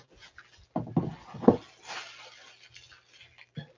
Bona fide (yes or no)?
yes